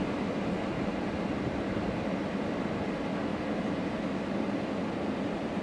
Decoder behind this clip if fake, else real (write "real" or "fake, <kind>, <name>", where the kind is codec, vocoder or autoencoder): real